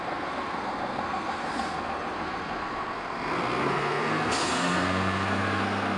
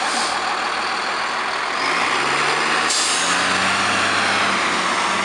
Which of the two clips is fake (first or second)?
first